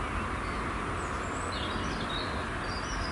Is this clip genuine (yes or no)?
yes